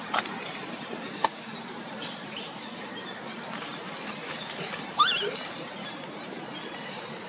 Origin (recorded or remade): remade